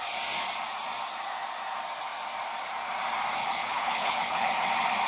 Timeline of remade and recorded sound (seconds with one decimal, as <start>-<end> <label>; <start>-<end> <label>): 0.0-3.4 recorded; 3.4-4.5 remade; 4.5-5.1 recorded